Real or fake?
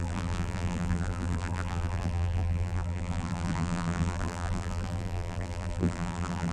fake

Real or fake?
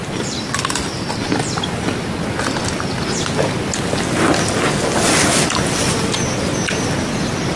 real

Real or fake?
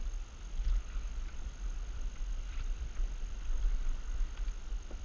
fake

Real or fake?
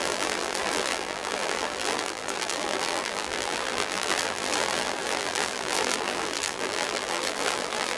fake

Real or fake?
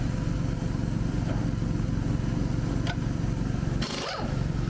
real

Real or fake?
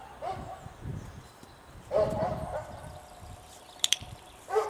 fake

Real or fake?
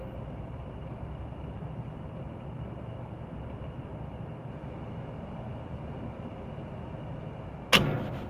real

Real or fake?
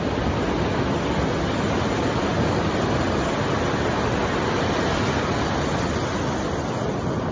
real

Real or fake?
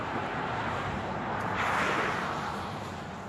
fake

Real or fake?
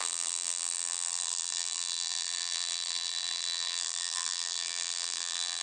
fake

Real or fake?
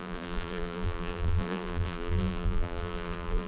fake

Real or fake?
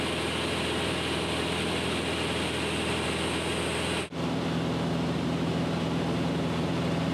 real